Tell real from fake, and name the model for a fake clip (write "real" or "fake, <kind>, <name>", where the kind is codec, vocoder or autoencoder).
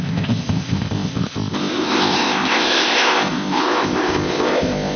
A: fake, codec, ZipCodec